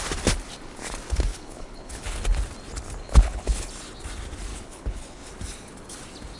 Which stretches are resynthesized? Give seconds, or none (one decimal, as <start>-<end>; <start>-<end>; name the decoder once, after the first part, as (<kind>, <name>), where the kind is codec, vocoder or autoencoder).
1.3-2.2 (codec, HILCodec); 3.0-3.7; 4.5-5.3